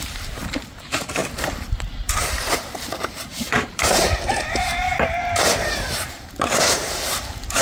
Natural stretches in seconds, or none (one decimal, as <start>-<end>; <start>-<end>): 1.2-1.7